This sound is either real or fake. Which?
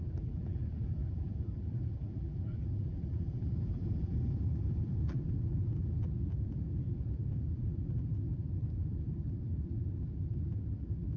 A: fake